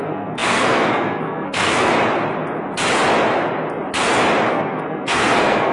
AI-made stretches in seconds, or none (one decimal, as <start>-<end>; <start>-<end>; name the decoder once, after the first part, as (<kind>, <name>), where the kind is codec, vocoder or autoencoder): 0.0-1.9 (codec, SNAC); 4.5-5.7